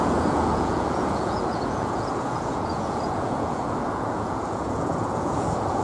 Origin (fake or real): fake